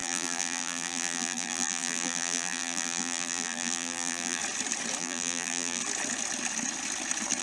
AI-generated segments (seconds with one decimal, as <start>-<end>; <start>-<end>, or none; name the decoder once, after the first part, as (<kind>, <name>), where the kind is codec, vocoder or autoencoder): 0.0-4.4 (vocoder, BigVGAN v2); 5.0-5.8